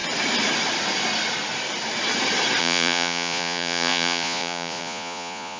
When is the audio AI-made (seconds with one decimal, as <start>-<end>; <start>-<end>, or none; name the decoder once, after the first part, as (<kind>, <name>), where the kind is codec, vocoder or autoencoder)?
2.6-5.6 (vocoder, Vocos)